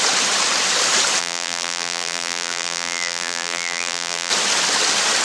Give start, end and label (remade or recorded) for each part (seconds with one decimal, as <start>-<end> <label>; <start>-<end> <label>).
0.0-1.2 recorded; 1.2-4.3 remade; 4.3-5.2 recorded